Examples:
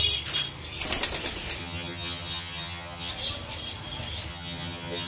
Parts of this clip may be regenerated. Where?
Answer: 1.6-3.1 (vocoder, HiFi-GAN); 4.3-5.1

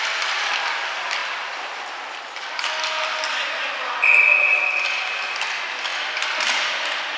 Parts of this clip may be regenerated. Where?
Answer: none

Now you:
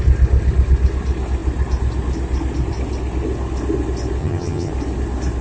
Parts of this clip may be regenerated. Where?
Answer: 4.2-4.7 (vocoder, HiFi-GAN)

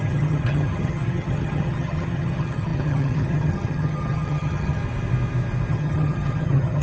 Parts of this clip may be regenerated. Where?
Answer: 0.0-4.8 (vocoder, HiFi-GAN); 5.7-6.8

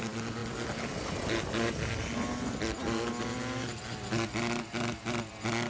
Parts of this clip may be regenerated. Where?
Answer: none